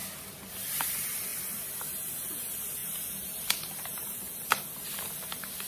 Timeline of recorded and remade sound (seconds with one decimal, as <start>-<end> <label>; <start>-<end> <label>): 0.0-2.8 recorded; 2.8-4.6 remade; 4.6-5.7 recorded